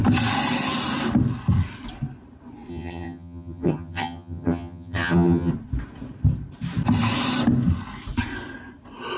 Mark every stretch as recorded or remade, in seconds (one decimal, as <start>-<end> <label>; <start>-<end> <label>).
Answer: 0.0-2.7 recorded; 2.7-5.5 remade; 5.5-9.2 recorded